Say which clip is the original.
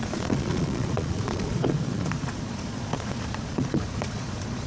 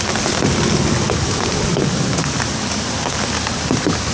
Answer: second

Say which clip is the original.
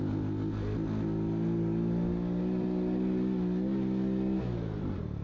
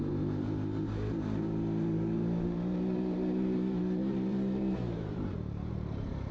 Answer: first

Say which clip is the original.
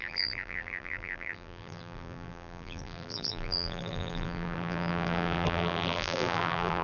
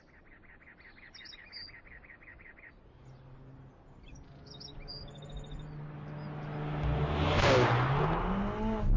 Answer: second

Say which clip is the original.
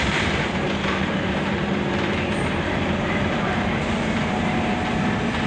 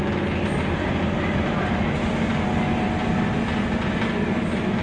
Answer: second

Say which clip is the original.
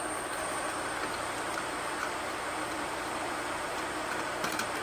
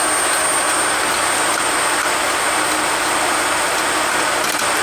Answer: second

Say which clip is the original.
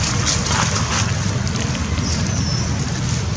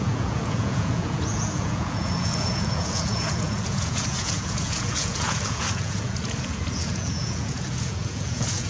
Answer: first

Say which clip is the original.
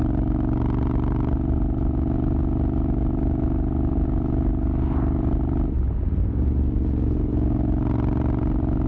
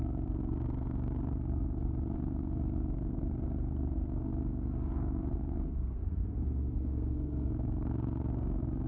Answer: first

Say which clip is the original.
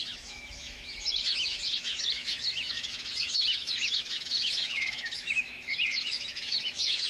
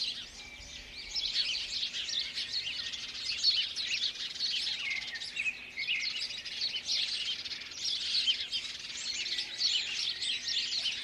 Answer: second